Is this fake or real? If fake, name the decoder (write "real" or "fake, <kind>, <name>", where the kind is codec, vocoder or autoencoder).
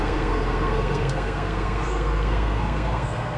fake, codec, SNAC